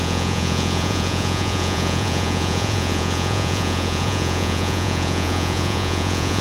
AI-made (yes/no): yes